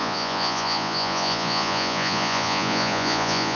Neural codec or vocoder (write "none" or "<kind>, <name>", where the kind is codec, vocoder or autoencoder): vocoder, Vocos